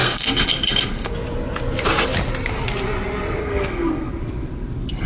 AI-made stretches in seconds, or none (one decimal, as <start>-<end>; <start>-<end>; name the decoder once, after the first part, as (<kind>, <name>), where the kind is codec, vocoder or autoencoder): 0.0-1.1 (codec, SNAC); 3.4-4.1